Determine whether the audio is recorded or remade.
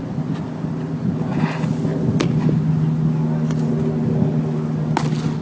recorded